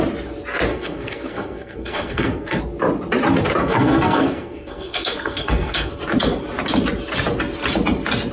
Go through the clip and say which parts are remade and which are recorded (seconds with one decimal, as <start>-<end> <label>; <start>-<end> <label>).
0.0-0.7 recorded; 0.7-2.6 remade; 2.6-3.6 recorded; 3.6-5.9 remade; 5.9-8.3 recorded